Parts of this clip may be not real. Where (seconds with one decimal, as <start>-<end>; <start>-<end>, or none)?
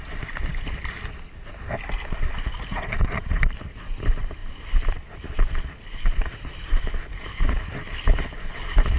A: 2.7-3.5